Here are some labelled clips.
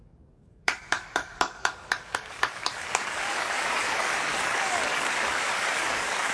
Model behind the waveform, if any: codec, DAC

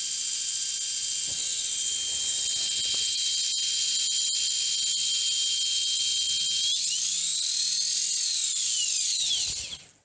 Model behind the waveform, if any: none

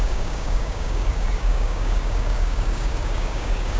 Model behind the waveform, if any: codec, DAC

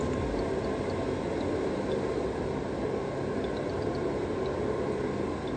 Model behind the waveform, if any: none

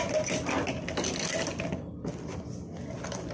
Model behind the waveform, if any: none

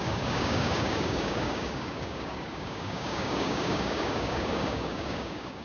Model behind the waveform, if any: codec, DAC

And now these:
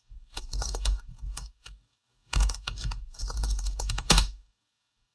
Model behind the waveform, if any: codec, DAC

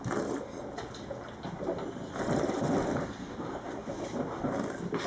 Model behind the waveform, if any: none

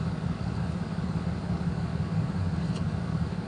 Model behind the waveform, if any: codec, DAC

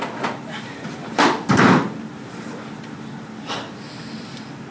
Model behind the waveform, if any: none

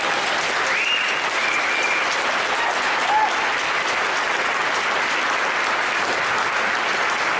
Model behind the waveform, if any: none